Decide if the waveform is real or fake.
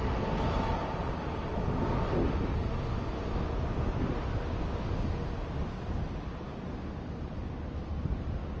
real